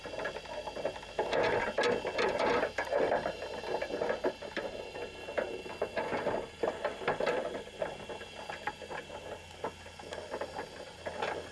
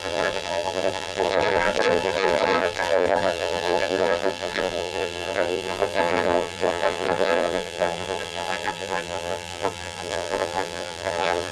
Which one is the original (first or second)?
first